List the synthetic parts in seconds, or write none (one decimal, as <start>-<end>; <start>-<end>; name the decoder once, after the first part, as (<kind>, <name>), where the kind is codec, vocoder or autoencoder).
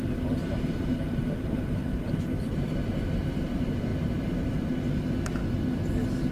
0.4-2.7 (vocoder, BigVGAN v2); 3.9-4.7